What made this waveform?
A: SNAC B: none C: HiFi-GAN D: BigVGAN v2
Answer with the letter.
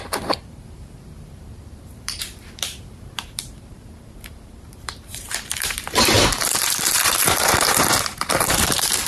D